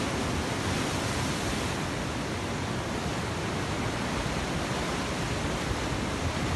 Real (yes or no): yes